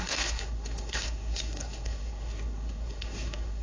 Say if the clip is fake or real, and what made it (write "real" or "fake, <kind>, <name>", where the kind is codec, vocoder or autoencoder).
fake, codec, SNAC